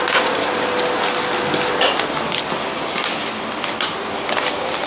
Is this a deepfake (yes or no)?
no